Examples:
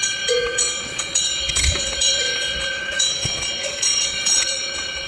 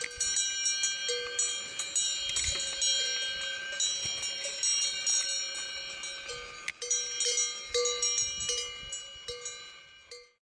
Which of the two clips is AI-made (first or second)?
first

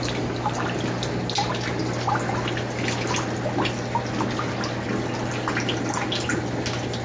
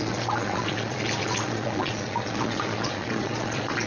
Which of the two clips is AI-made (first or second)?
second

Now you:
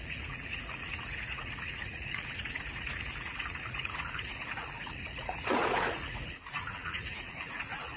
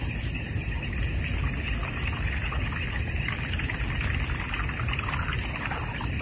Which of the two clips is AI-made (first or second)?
first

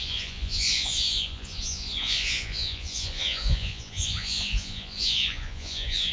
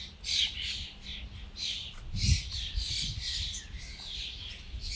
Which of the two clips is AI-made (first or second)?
first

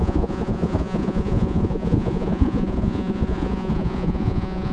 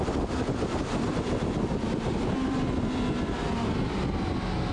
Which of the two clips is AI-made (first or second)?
first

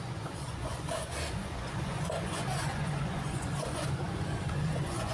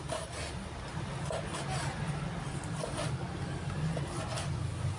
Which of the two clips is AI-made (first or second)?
first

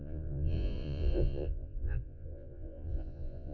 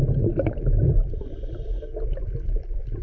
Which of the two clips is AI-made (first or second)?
first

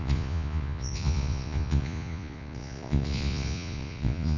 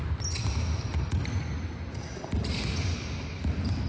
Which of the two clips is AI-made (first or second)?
first